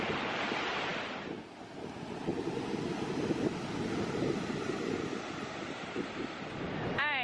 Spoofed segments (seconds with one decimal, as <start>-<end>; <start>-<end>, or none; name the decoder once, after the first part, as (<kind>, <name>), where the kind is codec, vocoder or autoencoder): none